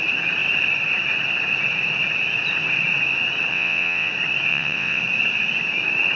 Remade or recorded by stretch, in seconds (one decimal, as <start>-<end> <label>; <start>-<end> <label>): 0.0-3.5 recorded; 3.5-4.1 remade; 4.1-4.5 recorded; 4.5-5.0 remade; 5.0-6.2 recorded